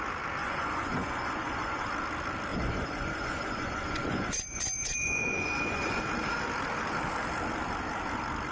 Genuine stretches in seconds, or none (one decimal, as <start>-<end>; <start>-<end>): 0.0-0.4; 1.9-2.5; 6.0-8.5